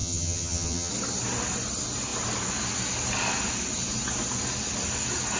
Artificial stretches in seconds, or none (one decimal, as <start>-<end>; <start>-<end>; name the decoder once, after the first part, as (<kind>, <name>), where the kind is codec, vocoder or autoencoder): 0.0-0.9 (vocoder, HiFi-GAN)